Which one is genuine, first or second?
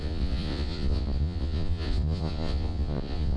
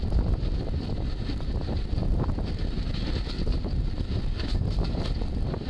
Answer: second